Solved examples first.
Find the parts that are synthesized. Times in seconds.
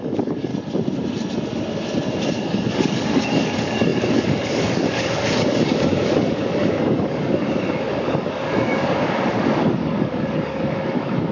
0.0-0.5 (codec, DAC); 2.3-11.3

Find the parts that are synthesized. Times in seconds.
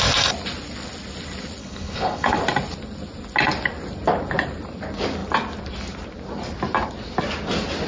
1.6-2.4 (codec, HILCodec)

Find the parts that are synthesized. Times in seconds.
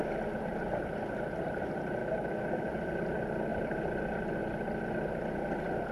2.0-2.7 (autoencoder, DAC-VAE)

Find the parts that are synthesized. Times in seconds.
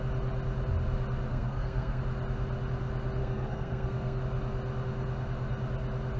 1.3-2.0 (codec, SNAC); 3.2-4.2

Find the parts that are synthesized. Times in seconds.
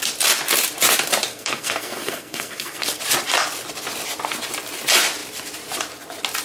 1.3-3.0 (codec, SNAC)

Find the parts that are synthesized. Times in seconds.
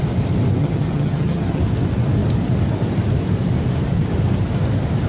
0.6-1.6 (vocoder, HiFi-GAN)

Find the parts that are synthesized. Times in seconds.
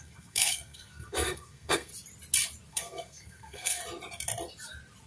0.0-1.9 (codec, SNAC); 2.7-3.8